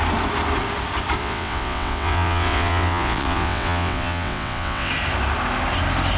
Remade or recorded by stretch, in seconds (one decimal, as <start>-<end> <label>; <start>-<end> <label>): 0.0-1.2 recorded; 1.2-4.9 remade; 4.9-6.2 recorded